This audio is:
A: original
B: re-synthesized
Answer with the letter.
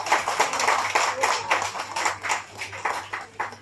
A